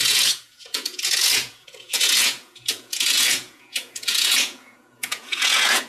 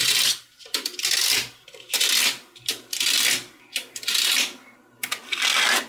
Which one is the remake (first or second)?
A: first